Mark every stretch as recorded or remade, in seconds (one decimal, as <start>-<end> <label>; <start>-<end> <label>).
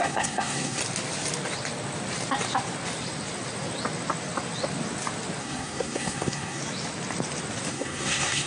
0.0-0.8 remade; 0.8-5.4 recorded; 5.4-6.6 remade; 6.6-7.7 recorded; 7.7-8.5 remade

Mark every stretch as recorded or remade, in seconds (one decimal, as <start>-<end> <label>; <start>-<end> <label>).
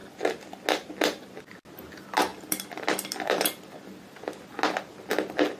0.0-2.3 recorded; 2.3-4.1 remade; 4.1-5.6 recorded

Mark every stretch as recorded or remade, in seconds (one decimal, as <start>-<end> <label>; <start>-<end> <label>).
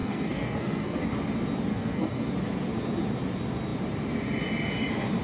0.0-1.0 remade; 1.0-1.7 recorded; 1.7-2.3 remade; 2.3-5.2 recorded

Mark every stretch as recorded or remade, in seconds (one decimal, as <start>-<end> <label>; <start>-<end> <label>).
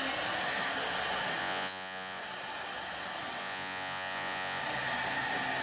0.0-1.4 recorded; 1.4-2.2 remade; 2.2-3.4 recorded; 3.4-4.6 remade; 4.6-5.6 recorded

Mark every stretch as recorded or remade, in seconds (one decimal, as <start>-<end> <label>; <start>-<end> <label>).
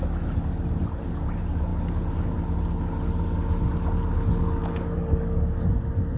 0.0-4.3 recorded; 4.3-5.7 remade; 5.7-6.2 recorded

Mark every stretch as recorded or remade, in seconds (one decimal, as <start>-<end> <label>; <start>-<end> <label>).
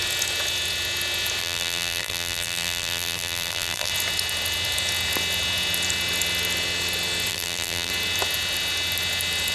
0.0-1.4 recorded; 1.4-3.9 remade; 3.9-7.3 recorded; 7.3-7.9 remade; 7.9-9.5 recorded